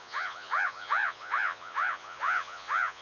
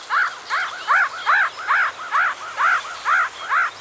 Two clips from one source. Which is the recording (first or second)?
second